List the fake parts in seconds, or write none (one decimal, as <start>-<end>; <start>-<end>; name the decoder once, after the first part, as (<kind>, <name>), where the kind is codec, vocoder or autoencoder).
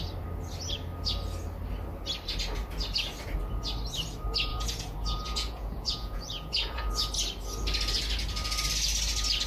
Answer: 4.5-6.9 (vocoder, Vocos)